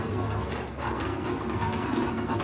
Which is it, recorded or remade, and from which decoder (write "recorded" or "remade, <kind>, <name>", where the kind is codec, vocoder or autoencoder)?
remade, codec, SNAC